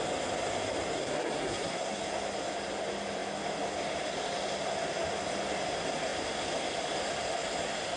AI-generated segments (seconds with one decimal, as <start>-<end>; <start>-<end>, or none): 1.0-2.0